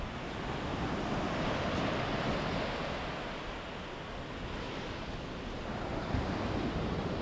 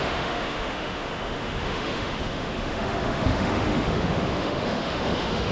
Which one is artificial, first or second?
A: second